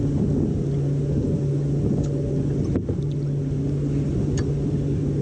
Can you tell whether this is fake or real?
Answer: real